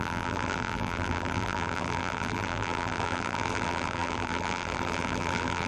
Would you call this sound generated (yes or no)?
yes